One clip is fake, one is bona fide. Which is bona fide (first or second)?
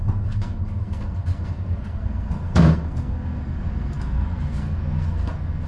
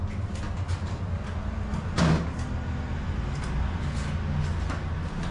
second